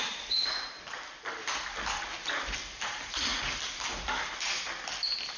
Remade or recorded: recorded